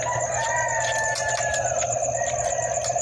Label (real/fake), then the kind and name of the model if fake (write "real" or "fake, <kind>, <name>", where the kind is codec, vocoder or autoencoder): real